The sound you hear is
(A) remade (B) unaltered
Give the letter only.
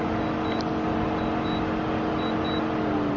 B